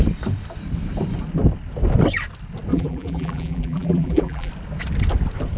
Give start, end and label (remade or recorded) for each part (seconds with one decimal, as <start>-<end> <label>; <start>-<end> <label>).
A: 0.0-2.7 recorded; 2.7-4.5 remade; 4.5-5.6 recorded